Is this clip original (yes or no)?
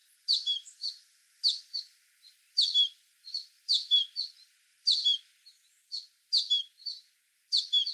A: yes